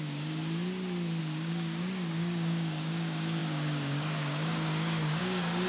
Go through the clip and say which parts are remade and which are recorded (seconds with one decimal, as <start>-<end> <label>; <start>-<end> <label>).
0.0-0.4 remade; 0.4-1.2 recorded; 1.2-5.7 remade